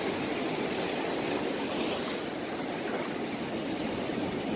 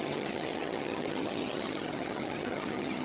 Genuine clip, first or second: first